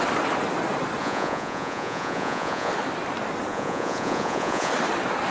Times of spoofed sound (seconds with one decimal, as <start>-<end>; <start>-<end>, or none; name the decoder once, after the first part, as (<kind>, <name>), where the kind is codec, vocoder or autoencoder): 1.0-2.7 (vocoder, Vocos); 3.5-4.7